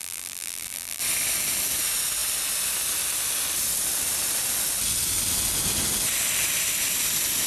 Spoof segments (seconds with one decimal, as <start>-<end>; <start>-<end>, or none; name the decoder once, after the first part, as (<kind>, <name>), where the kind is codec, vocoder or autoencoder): 0.0-1.0 (vocoder, BigVGAN v2)